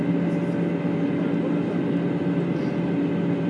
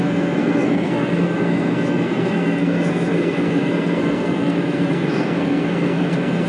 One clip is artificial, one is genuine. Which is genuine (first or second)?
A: first